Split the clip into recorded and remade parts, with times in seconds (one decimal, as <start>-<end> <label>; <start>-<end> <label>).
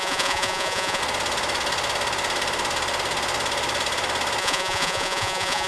0.0-1.0 remade; 1.0-4.4 recorded; 4.4-5.7 remade